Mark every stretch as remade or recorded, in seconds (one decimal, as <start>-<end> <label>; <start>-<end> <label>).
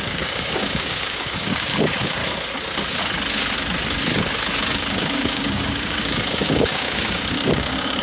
0.0-2.2 remade; 2.2-4.6 recorded; 4.6-8.0 remade